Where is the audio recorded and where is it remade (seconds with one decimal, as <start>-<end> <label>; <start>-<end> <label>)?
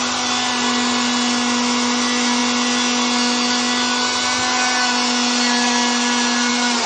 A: 0.0-6.9 recorded